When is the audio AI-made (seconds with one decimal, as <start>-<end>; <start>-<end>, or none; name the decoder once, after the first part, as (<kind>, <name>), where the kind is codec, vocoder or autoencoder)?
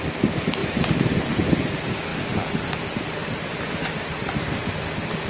0.6-1.6 (vocoder, BigVGAN v2); 2.1-2.8; 3.2-3.9